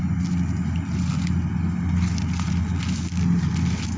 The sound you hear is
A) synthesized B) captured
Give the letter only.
B